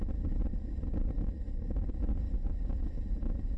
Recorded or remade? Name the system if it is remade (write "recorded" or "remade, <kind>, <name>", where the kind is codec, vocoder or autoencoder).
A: recorded